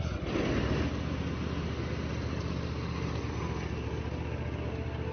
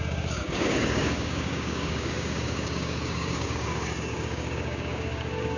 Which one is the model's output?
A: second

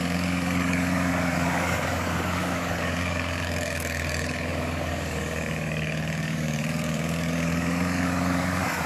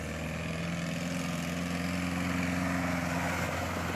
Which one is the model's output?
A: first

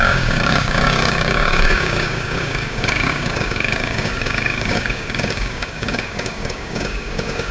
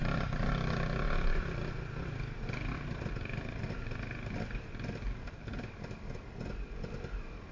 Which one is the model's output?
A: first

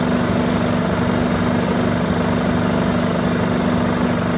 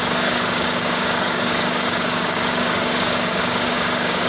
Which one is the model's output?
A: second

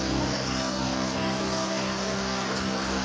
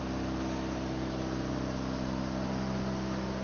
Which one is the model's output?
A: first